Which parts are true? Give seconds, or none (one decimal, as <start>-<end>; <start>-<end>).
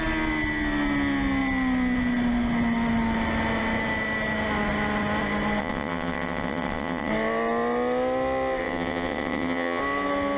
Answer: 0.0-5.6; 7.1-8.6; 9.8-10.4